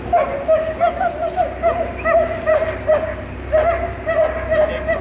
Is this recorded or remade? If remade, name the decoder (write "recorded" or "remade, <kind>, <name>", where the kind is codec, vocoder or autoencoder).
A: recorded